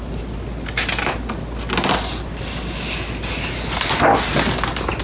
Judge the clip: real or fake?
real